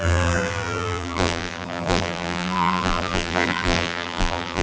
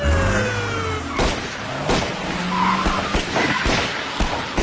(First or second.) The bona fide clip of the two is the second